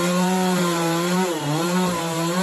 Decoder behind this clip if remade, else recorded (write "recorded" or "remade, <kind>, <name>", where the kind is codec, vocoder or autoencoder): remade, vocoder, BigVGAN v2